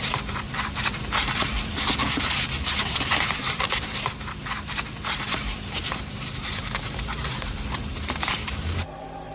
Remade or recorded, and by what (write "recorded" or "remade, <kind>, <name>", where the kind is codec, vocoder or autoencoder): remade, vocoder, BigVGAN v2